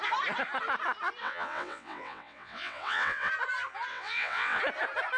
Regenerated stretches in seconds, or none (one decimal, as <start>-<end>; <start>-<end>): 1.2-3.3; 3.9-4.6